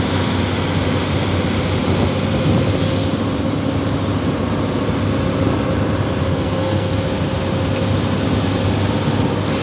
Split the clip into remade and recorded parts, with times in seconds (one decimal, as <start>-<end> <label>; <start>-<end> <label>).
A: 0.0-6.3 recorded; 6.3-6.9 remade; 6.9-9.6 recorded